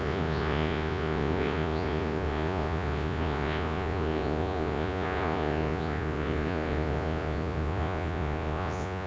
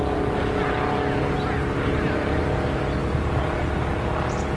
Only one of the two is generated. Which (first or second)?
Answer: first